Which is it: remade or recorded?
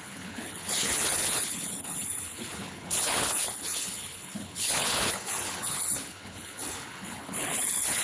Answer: remade